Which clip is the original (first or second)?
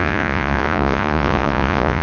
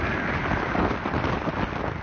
second